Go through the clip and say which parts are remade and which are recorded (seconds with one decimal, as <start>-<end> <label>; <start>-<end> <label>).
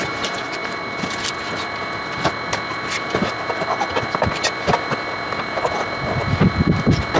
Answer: 0.0-7.2 recorded